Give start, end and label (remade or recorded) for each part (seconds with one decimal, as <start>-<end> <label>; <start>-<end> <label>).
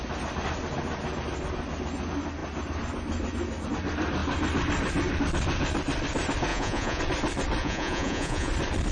0.0-6.5 recorded; 6.5-7.0 remade; 7.0-7.6 recorded; 7.6-8.5 remade; 8.5-8.9 recorded